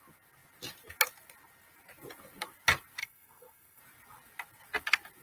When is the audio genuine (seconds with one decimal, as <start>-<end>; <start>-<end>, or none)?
0.0-3.0; 3.8-5.2